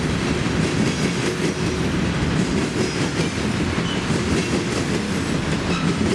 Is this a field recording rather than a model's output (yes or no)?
yes